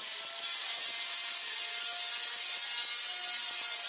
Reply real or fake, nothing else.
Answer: real